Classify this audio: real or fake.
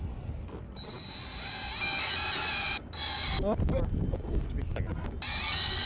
real